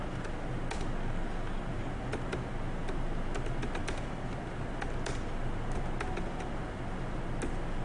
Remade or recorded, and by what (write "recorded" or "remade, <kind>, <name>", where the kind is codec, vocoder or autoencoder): recorded